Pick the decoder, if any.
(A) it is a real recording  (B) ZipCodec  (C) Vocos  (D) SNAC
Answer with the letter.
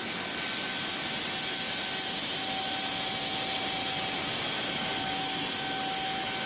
A